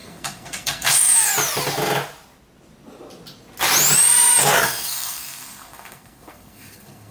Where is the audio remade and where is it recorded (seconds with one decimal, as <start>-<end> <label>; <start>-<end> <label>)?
0.0-1.3 remade; 1.3-4.4 recorded; 4.4-7.1 remade